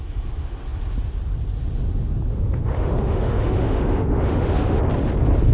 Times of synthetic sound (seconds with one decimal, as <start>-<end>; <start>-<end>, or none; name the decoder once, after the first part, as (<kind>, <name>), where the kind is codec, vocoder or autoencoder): 2.3-4.8 (autoencoder, DAC-VAE)